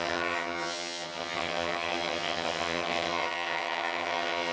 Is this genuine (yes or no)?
no